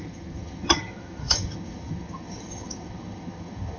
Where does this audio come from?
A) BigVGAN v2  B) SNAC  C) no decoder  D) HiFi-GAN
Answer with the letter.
D